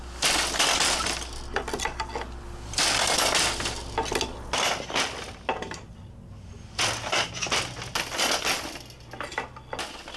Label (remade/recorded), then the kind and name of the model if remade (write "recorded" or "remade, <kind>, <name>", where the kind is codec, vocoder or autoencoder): recorded